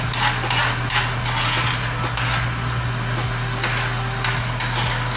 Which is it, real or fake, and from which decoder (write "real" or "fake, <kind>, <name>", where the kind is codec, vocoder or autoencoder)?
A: real